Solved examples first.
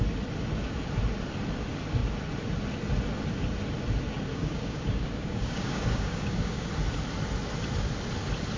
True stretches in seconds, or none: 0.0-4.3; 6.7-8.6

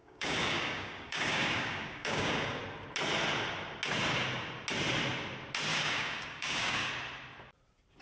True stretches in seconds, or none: 2.6-5.7; 6.9-8.0

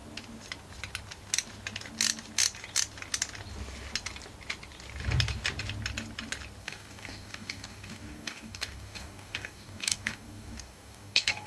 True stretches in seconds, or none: 0.0-6.6